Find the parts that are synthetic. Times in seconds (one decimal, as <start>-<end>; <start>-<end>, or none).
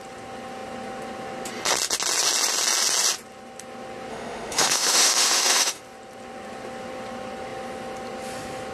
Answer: 4.1-5.8